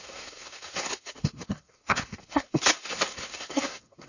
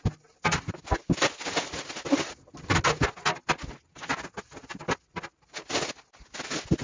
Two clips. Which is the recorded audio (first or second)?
second